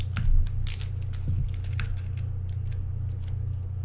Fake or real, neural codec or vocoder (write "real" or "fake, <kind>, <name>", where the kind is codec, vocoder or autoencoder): real